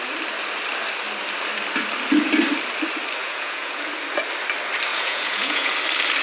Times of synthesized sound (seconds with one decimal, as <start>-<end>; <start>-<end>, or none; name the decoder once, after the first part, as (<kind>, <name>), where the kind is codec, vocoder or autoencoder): 3.2-3.8 (vocoder, Vocos); 4.9-5.7